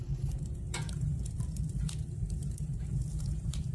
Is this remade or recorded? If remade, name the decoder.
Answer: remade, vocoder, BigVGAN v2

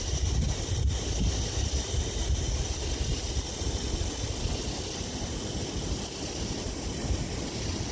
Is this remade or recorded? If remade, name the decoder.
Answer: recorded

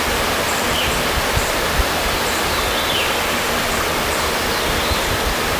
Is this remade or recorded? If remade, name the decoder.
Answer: remade, vocoder, BigVGAN v2